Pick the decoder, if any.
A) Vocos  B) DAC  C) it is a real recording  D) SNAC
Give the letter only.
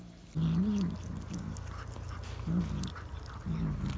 C